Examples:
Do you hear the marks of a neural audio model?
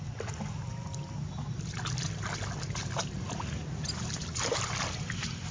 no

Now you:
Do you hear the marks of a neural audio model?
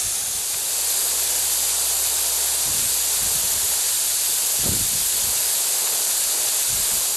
no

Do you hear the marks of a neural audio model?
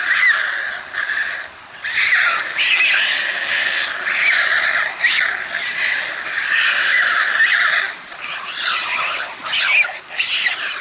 no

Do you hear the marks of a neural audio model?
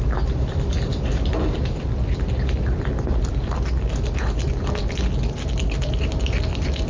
no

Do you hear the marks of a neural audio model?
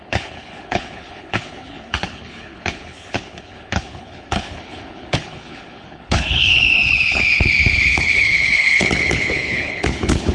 yes